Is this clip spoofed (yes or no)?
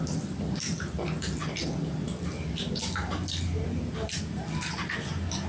yes